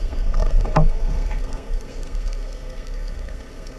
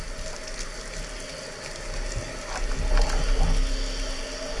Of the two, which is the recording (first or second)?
second